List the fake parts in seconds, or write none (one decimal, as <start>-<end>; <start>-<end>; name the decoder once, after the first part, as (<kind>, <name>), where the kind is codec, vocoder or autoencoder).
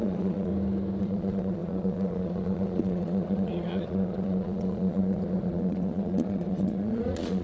0.0-0.5 (vocoder, Vocos); 1.0-7.4